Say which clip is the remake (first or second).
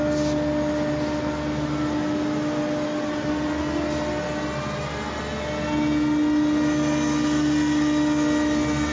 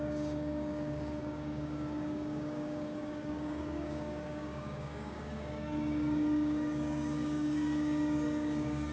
second